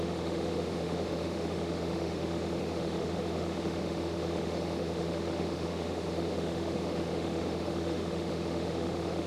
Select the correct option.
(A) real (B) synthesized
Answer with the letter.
B